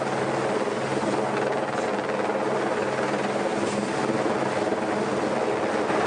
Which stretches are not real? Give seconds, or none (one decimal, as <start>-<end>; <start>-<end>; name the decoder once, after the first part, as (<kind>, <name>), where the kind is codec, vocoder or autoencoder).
none